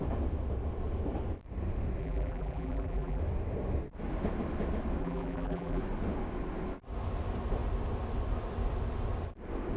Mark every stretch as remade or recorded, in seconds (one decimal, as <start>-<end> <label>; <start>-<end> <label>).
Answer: 0.0-2.0 recorded; 2.0-3.2 remade; 3.2-5.0 recorded; 5.0-5.8 remade; 5.8-9.8 recorded